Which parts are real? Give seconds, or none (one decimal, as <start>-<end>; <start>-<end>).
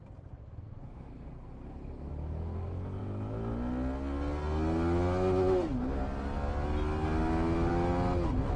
0.0-0.4; 2.1-8.6